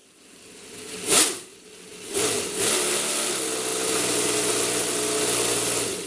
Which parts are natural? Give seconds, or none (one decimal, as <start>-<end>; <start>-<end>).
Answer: 0.0-6.1